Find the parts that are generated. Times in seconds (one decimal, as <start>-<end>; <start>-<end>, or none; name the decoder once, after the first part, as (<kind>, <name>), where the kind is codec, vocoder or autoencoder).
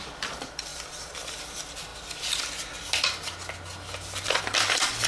0.0-1.9 (vocoder, BigVGAN v2)